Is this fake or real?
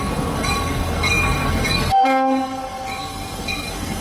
fake